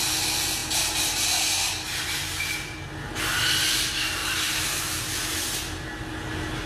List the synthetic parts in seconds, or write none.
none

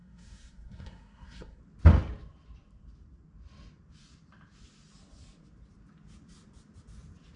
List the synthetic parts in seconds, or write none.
0.0-1.6 (codec, SNAC)

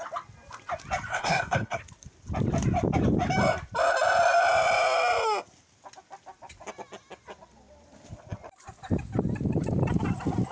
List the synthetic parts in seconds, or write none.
1.1-1.8 (codec, SNAC)

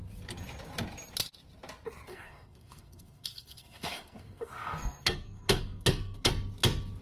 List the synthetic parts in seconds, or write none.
2.1-6.3 (codec, SNAC)

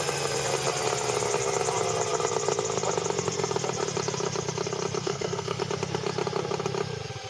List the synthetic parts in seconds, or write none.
5.0-5.6 (codec, SNAC)

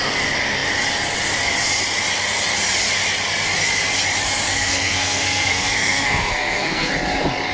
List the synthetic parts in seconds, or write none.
4.5-6.9 (codec, SNAC)